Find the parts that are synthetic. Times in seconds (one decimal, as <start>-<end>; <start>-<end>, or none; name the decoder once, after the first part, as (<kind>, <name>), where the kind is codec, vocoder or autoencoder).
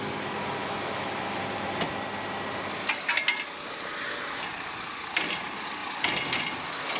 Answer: 0.6-1.4 (autoencoder, DAC-VAE)